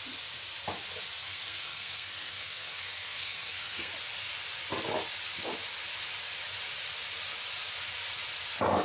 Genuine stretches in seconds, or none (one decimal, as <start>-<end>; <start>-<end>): 0.0-1.2; 3.9-8.8